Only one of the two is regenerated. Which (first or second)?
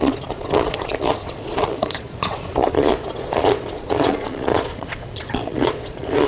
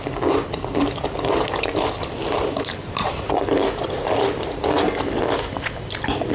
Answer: first